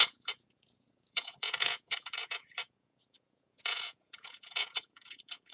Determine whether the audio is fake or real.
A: fake